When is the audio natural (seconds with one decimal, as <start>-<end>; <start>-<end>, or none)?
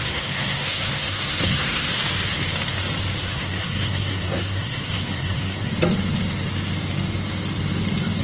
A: 1.9-3.2; 5.7-8.2